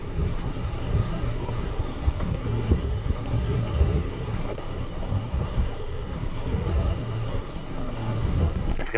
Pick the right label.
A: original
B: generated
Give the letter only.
B